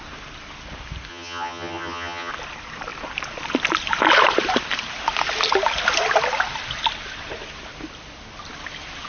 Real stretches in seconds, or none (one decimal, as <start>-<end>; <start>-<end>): 0.0-1.1; 2.3-9.1